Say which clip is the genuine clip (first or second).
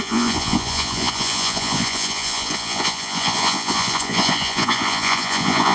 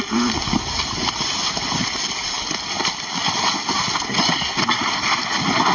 second